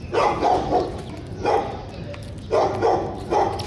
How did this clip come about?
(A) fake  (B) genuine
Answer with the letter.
B